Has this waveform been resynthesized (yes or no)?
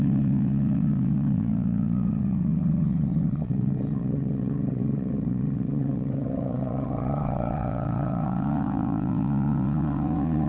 yes